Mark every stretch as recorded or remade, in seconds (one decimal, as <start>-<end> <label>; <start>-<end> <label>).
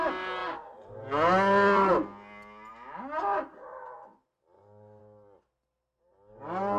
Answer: 0.0-0.4 recorded; 0.4-1.9 remade; 1.9-6.8 recorded